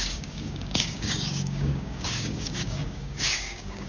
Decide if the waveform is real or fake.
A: fake